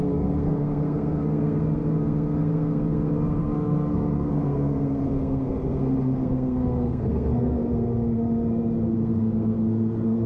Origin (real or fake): fake